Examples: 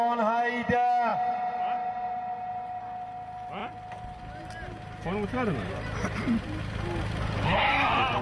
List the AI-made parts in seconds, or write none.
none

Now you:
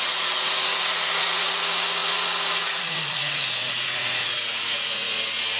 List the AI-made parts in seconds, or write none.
0.0-5.6 (vocoder, Vocos)